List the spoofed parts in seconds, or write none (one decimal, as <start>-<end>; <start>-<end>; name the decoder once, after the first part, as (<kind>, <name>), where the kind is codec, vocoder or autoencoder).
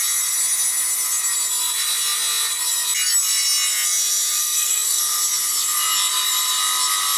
4.4-5.0 (codec, SNAC)